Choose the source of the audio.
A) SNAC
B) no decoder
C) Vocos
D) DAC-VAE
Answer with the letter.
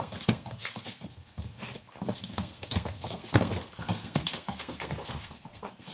A